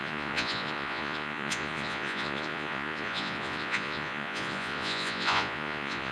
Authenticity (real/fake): fake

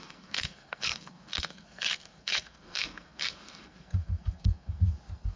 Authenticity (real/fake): fake